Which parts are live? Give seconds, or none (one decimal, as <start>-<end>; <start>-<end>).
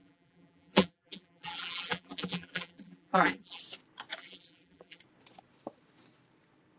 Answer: 3.6-4.2; 5.0-6.8